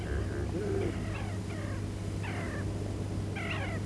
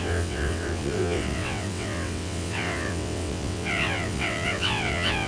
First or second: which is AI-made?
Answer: second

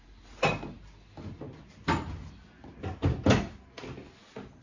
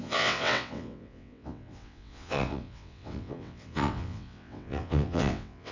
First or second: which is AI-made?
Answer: second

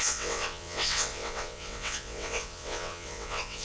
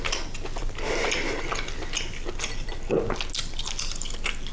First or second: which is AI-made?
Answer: first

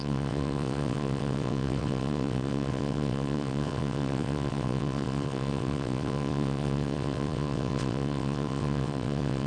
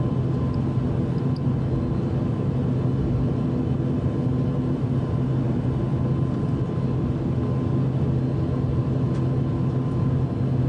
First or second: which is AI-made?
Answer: first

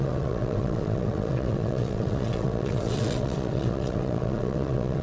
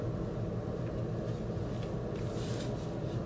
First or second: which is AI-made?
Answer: first